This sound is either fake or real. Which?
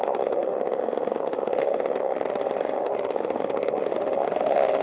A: fake